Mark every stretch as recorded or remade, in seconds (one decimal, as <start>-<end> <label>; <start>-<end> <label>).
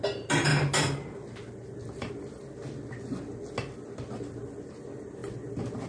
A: 0.0-5.9 recorded